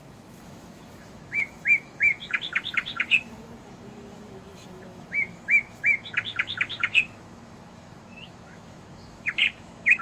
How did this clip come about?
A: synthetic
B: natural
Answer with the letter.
A